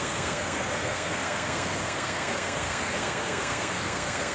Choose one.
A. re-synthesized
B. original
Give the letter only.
A